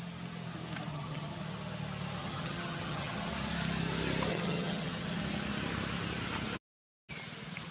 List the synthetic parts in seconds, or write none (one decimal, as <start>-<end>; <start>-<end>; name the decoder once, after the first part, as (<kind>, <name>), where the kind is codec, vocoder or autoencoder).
0.9-1.4 (vocoder, HiFi-GAN); 2.2-3.3; 4.3-5.2